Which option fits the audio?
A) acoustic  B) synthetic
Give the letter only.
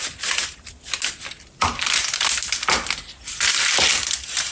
A